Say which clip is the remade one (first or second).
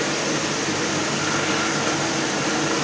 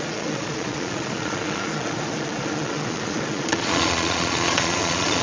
second